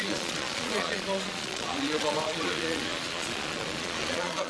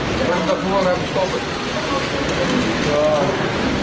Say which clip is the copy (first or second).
first